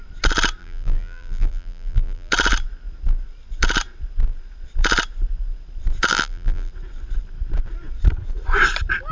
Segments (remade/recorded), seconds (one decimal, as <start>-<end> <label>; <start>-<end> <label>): 0.0-0.6 recorded; 0.6-2.3 remade; 2.3-6.1 recorded; 6.1-6.7 remade; 6.7-9.1 recorded